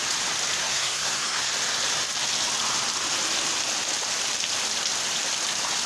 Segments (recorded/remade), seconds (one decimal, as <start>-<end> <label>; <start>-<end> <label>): 0.0-0.6 recorded; 0.6-1.5 remade; 1.5-5.9 recorded